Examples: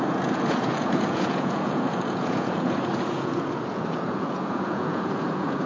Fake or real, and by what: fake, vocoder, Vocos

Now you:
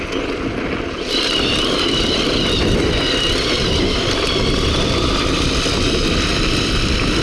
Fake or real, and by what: real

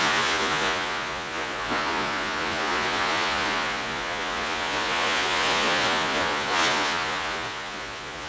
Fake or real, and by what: fake, vocoder, Vocos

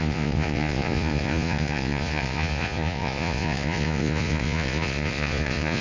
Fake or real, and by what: fake, vocoder, Vocos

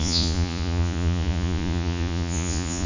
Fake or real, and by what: fake, vocoder, Vocos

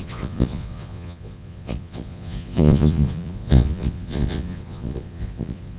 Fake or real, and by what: fake, vocoder, Vocos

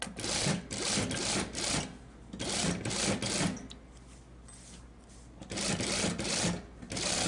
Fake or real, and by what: real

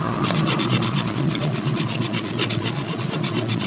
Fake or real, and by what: fake, vocoder, Vocos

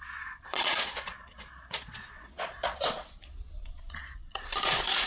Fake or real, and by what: fake, vocoder, Vocos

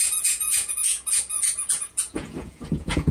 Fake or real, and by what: fake, vocoder, Vocos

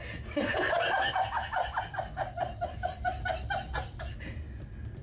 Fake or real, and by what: real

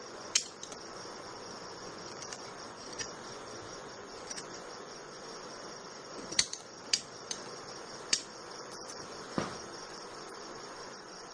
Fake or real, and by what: fake, vocoder, Vocos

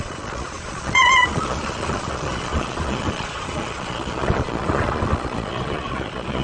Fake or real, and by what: fake, vocoder, Vocos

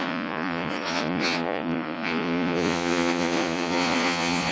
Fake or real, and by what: fake, vocoder, Vocos